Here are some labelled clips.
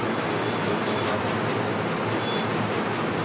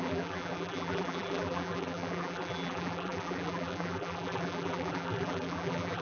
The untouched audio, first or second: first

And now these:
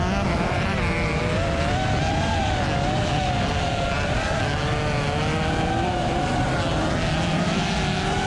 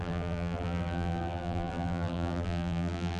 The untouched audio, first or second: first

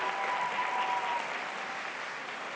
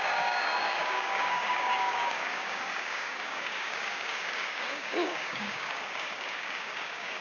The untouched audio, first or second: first